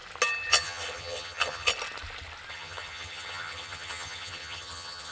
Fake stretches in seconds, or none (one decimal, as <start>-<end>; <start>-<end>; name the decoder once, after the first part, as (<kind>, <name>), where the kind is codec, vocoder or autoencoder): 0.5-1.7 (vocoder, HiFi-GAN); 2.5-5.1